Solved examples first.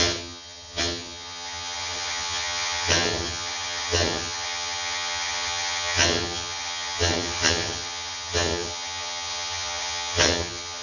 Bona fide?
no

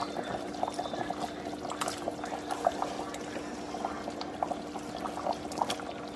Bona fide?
yes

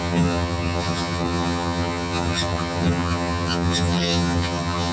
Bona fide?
no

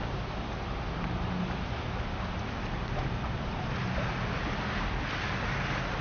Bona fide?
yes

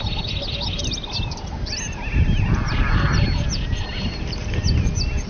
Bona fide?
yes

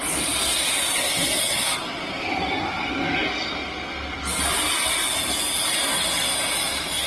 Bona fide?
yes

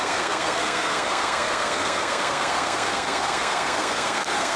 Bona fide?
no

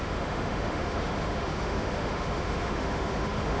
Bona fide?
no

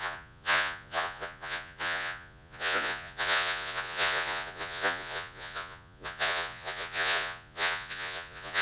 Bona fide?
no